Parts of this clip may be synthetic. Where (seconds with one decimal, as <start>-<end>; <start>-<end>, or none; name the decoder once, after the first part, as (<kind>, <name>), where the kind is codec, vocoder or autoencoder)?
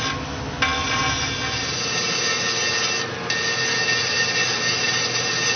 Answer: none